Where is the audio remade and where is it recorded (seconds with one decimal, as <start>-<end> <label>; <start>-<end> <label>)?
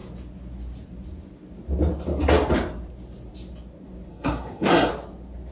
0.0-4.1 recorded; 4.1-4.9 remade; 4.9-5.5 recorded